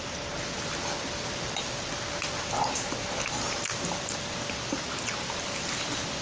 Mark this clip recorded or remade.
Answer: recorded